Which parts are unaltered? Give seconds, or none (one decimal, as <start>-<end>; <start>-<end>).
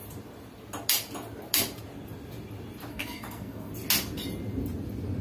0.0-2.9; 3.7-5.2